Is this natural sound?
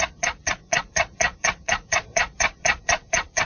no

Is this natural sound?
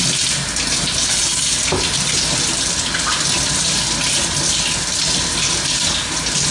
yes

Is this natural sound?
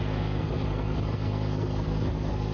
no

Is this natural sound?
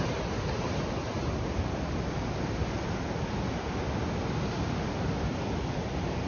yes